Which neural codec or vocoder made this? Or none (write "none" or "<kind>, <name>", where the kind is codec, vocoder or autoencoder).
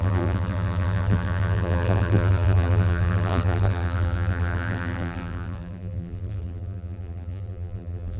vocoder, BigVGAN v2